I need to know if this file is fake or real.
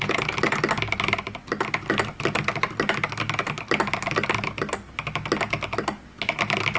real